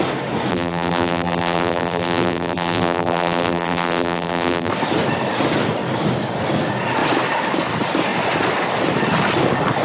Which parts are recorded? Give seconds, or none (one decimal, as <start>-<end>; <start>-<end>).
0.0-0.5; 4.7-9.8